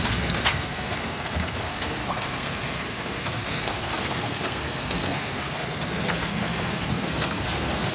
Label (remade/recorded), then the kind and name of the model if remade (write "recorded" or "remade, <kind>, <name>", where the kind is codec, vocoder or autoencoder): remade, codec, SNAC